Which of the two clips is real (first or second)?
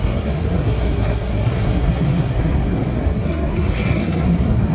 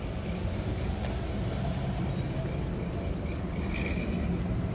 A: second